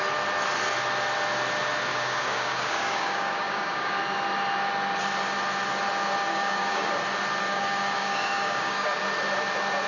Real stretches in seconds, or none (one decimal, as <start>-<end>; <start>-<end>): 0.0-1.9; 4.0-6.3; 6.9-7.4; 9.0-9.9